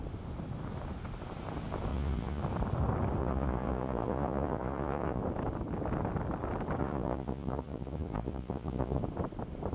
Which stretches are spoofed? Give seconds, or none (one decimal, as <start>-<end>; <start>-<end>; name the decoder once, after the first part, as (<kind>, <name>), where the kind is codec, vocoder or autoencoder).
1.9-2.4 (vocoder, Vocos); 3.2-5.2; 6.8-9.0

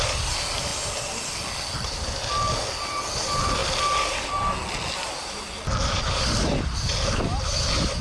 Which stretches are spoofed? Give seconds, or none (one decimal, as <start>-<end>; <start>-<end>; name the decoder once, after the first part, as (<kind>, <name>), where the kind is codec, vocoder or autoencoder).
none